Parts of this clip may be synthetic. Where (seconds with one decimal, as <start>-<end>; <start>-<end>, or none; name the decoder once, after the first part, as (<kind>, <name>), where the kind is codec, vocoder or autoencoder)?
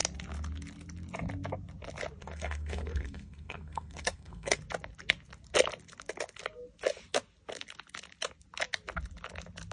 2.2-4.6 (codec, SNAC)